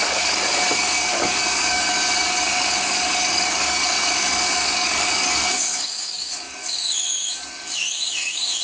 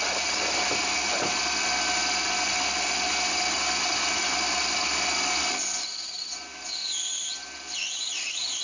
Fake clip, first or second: first